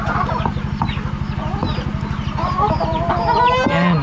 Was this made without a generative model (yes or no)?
yes